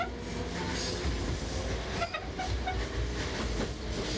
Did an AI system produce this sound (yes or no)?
no